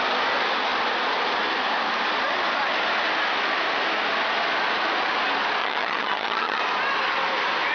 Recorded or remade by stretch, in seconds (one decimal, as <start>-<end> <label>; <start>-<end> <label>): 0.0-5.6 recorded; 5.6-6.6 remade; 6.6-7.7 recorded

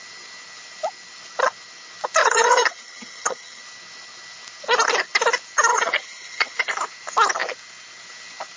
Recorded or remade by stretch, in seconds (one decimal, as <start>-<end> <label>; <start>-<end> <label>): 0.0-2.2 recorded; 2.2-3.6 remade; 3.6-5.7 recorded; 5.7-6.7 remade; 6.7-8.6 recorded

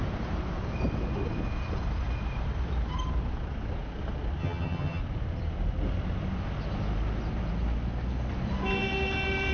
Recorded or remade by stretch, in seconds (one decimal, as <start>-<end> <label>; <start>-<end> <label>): 0.0-4.4 recorded; 4.4-5.0 remade; 5.0-9.5 recorded

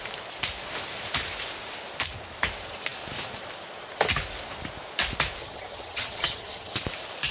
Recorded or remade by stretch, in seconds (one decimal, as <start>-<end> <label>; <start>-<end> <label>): 0.0-5.4 recorded; 5.4-6.7 remade; 6.7-7.3 recorded